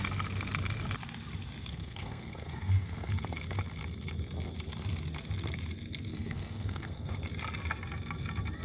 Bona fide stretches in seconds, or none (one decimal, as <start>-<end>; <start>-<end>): 0.0-1.7; 3.1-6.1; 7.1-8.6